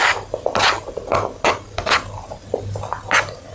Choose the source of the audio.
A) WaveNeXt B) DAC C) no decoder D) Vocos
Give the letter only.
C